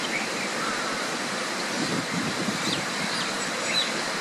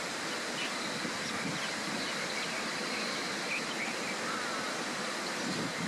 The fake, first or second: first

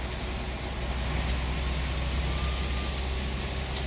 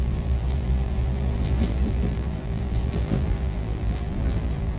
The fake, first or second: second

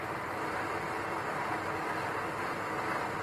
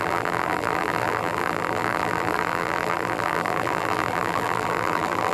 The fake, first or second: second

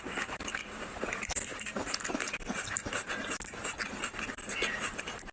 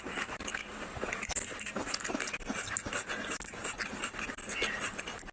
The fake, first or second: first